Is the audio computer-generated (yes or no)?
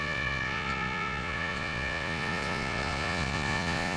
yes